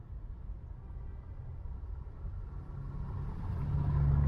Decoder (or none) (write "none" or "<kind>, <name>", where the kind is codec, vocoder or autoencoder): none